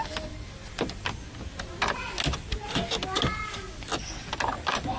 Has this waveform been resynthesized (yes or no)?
no